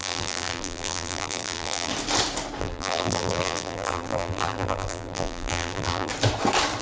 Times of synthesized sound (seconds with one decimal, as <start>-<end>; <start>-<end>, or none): 0.0-1.9; 2.6-6.1